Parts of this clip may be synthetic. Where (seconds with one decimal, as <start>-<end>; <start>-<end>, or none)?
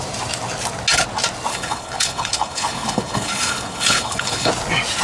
1.5-4.5